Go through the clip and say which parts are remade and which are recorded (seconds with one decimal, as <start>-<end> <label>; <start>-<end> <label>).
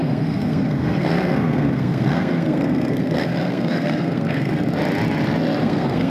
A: 0.0-4.5 remade; 4.5-5.6 recorded; 5.6-6.1 remade